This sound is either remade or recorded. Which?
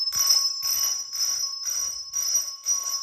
recorded